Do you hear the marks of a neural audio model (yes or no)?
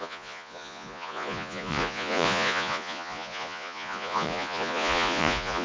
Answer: yes